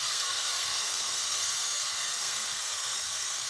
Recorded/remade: remade